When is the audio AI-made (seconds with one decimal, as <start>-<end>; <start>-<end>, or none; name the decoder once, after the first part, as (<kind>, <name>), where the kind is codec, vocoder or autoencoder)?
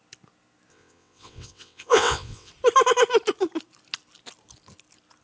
0.7-2.5 (vocoder, WaveNeXt)